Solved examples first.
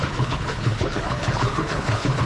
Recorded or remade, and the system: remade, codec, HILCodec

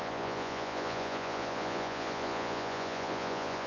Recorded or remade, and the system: remade, vocoder, Vocos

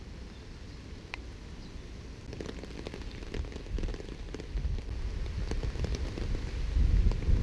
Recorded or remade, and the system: recorded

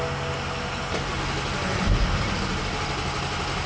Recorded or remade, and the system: recorded